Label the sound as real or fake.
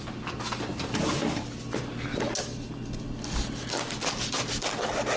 real